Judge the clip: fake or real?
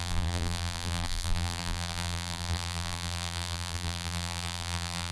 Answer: fake